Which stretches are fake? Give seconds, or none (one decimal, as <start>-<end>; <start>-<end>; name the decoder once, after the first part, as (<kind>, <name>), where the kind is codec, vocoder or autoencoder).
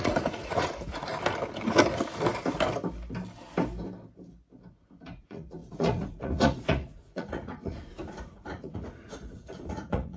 0.0-1.1 (vocoder, Vocos); 4.7-10.2